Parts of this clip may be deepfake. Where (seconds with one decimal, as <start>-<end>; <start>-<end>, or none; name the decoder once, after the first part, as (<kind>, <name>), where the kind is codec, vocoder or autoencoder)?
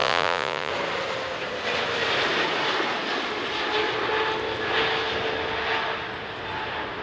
0.0-0.7 (vocoder, Vocos)